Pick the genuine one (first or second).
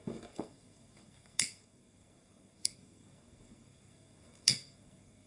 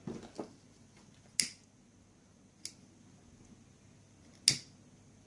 second